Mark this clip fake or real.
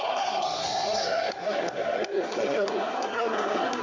fake